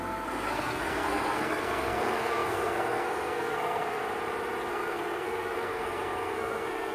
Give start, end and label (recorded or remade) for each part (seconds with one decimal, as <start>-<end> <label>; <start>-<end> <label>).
0.0-4.0 remade; 4.0-4.7 recorded; 4.7-6.9 remade